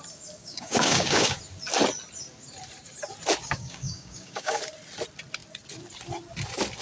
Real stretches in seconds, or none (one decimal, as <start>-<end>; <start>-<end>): 0.0-0.4; 1.4-3.4; 4.6-6.8